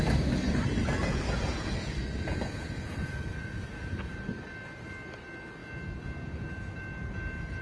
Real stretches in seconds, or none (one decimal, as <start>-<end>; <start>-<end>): 0.0-1.0; 4.1-7.6